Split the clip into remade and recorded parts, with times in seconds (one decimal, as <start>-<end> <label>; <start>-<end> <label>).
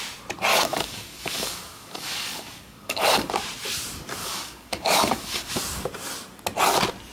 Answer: 0.0-0.5 recorded; 0.5-3.3 remade; 3.3-4.2 recorded; 4.2-5.5 remade; 5.5-7.1 recorded